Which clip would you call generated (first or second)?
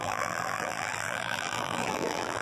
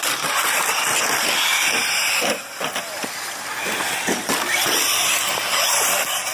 first